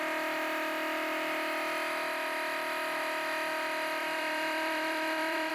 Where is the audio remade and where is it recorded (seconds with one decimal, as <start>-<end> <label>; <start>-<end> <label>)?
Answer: 0.0-4.0 recorded; 4.0-5.5 remade